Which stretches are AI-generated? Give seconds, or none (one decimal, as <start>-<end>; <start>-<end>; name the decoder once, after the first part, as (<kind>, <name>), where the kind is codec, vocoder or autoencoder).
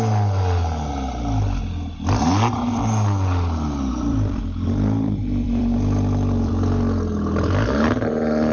3.9-6.5 (vocoder, BigVGAN v2)